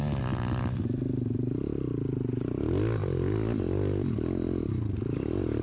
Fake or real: real